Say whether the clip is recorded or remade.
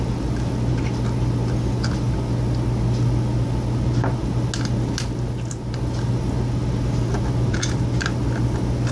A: recorded